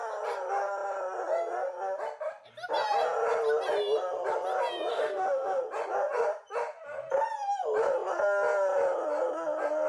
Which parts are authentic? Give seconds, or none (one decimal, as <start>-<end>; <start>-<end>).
0.0-4.9; 5.6-9.9